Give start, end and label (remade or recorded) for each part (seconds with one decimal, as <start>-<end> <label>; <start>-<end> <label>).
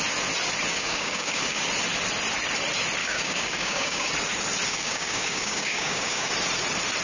0.0-0.7 recorded; 0.7-1.6 remade; 1.6-3.0 recorded; 3.0-4.1 remade; 4.1-4.7 recorded; 4.7-6.3 remade; 6.3-7.0 recorded